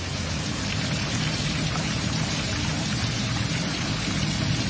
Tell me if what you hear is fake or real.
fake